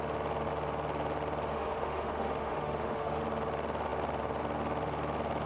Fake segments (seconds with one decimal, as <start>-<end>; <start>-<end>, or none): 1.5-3.2